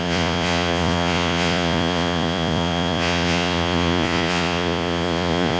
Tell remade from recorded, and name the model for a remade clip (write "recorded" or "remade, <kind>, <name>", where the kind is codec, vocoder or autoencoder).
remade, vocoder, Vocos